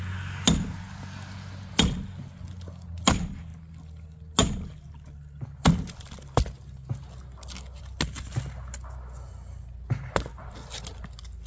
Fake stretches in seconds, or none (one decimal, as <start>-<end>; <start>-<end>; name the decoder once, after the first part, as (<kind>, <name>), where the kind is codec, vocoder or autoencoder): none